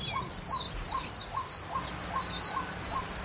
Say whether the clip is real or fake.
real